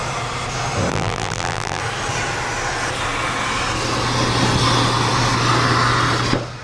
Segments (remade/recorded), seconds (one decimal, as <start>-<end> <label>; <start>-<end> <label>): 0.0-0.9 recorded; 0.9-1.8 remade; 1.8-6.6 recorded